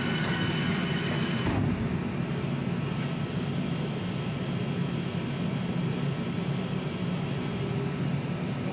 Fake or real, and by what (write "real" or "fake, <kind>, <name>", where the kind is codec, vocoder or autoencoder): real